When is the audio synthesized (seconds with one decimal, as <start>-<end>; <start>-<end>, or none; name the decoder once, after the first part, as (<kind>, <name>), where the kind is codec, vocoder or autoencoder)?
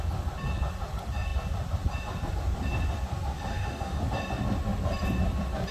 3.5-4.0 (autoencoder, DAC-VAE)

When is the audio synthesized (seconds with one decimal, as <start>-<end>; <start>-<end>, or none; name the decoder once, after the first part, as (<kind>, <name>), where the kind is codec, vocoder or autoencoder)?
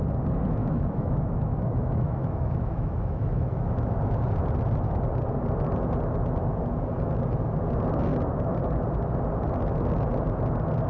0.6-4.0 (autoencoder, DAC-VAE)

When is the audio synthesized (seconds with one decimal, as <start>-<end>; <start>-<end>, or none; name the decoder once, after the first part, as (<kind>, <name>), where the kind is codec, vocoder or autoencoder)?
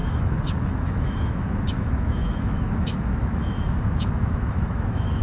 0.0-5.2 (autoencoder, DAC-VAE)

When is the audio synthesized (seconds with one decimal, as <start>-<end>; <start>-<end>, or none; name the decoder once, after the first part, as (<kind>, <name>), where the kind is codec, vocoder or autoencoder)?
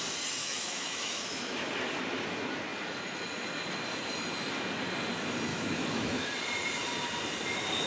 0.4-1.7 (autoencoder, DAC-VAE); 5.5-6.3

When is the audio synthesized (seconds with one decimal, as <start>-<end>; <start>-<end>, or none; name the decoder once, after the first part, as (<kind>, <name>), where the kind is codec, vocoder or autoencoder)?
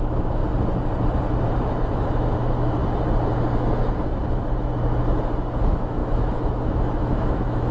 0.0-0.4 (autoencoder, DAC-VAE); 1.9-2.8; 5.6-7.7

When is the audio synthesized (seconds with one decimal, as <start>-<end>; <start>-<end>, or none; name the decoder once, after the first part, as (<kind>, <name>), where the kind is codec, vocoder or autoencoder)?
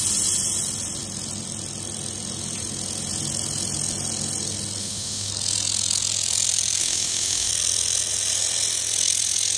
4.8-5.3 (autoencoder, DAC-VAE); 6.8-7.5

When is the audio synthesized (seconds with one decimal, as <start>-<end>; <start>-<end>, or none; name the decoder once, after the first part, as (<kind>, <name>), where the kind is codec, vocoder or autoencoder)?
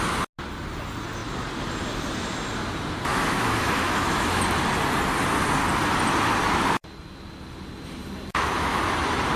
3.1-4.4 (autoencoder, DAC-VAE); 8.3-8.8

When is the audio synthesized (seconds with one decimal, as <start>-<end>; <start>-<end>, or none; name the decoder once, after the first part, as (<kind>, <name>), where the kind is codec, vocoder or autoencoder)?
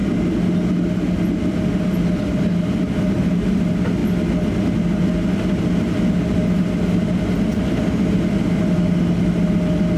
none